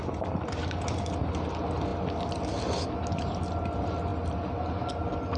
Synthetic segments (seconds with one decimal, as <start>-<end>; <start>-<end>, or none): none

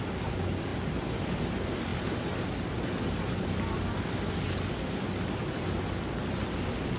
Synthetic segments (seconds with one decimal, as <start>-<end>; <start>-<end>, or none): none

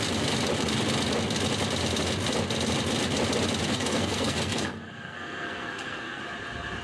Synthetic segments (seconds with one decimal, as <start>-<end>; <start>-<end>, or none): 3.7-6.2

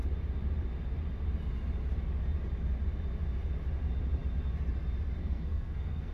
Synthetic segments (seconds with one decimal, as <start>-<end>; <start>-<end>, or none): 5.2-6.1

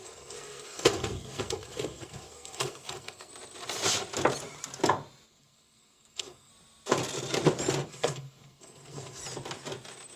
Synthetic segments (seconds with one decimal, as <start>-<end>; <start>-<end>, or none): 0.0-3.3; 5.3-6.5; 7.9-9.2

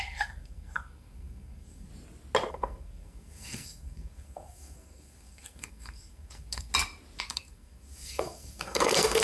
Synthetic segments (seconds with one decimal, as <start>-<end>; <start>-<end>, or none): 0.0-1.9; 2.5-6.7; 7.2-9.2